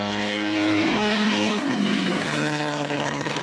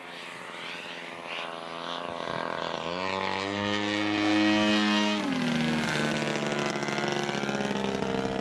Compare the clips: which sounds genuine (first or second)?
second